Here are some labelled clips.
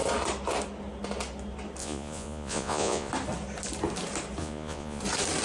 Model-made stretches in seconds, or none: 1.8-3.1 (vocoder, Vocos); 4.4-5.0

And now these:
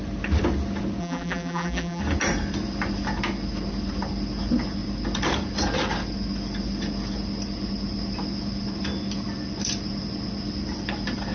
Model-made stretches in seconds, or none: 1.0-2.0 (vocoder, BigVGAN v2)

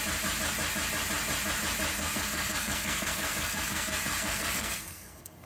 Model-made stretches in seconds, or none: 1.9-5.5 (codec, SNAC)

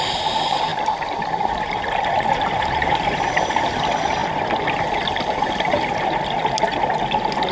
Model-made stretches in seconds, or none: 0.7-3.6 (vocoder, BigVGAN v2)

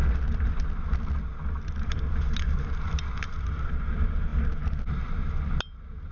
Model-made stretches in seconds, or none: none

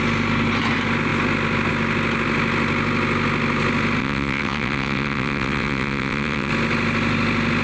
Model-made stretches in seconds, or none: 4.0-6.5 (vocoder, WaveNeXt)